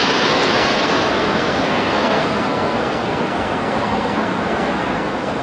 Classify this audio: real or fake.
fake